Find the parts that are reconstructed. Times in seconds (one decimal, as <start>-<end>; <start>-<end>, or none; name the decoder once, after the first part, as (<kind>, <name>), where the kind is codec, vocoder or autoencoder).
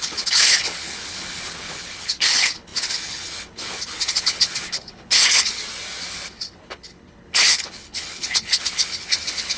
0.0-5.6 (codec, HILCodec); 6.1-9.6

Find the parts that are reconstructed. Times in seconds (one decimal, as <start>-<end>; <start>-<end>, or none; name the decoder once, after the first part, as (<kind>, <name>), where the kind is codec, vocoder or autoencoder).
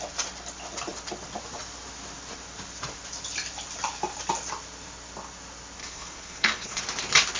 5.8-6.8 (codec, HILCodec)